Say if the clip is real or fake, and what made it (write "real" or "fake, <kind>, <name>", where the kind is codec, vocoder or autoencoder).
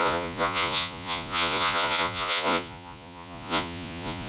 fake, vocoder, Vocos